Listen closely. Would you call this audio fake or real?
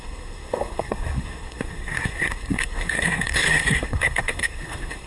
fake